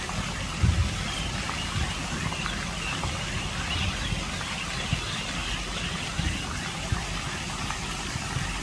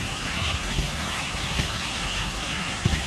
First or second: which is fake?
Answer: second